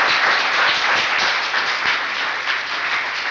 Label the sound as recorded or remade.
recorded